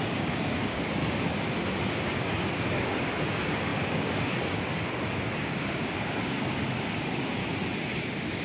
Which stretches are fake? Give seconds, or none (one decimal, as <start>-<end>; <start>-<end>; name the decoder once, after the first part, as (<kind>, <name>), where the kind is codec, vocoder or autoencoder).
0.0-1.0 (codec, DAC); 2.0-7.4; 8.0-8.4